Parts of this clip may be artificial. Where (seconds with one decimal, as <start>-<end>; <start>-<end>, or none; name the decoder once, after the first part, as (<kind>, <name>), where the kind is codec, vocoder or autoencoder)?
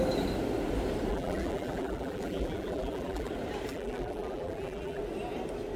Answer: 1.1-3.3 (vocoder, BigVGAN v2); 3.7-5.0